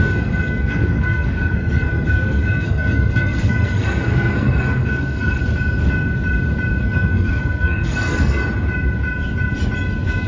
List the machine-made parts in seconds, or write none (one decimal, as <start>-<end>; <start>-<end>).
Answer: 0.0-5.4; 6.8-8.4